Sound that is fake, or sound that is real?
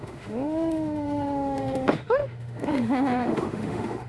fake